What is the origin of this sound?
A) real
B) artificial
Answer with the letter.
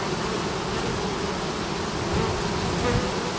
A